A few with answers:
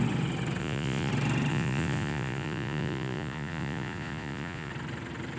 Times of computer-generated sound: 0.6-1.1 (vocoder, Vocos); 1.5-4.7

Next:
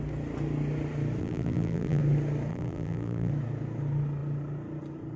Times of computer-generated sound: 1.2-2.0 (vocoder, BigVGAN v2); 2.5-3.3

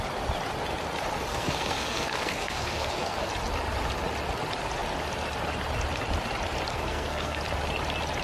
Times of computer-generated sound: 1.3-3.3 (codec, SNAC); 6.7-7.4

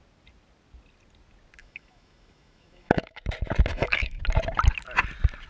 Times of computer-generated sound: 1.6-3.2 (autoencoder, DAC-VAE); 3.7-4.2

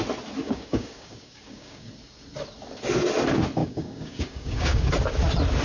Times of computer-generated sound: 0.4-1.9 (codec, DAC); 3.6-4.9

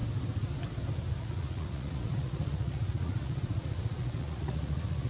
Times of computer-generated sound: 1.2-5.1 (vocoder, Vocos)

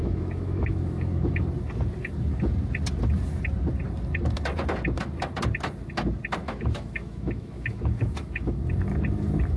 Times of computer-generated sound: 0.0-1.4 (autoencoder, DAC-VAE); 6.4-8.6

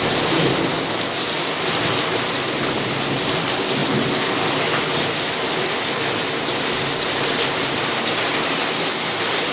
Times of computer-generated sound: none